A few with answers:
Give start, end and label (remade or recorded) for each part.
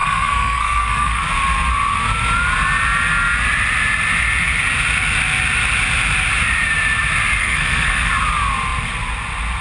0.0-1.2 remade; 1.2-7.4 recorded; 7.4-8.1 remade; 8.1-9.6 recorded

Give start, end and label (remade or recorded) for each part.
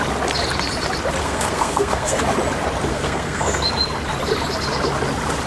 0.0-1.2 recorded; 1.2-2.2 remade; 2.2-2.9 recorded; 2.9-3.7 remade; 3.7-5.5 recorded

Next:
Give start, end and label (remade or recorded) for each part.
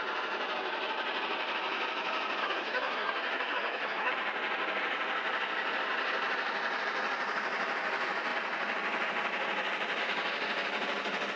0.0-2.4 recorded; 2.4-4.1 remade; 4.1-11.4 recorded